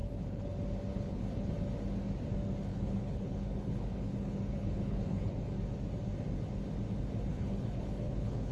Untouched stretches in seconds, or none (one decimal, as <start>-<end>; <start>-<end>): 0.5-0.9; 1.5-2.7; 5.3-7.3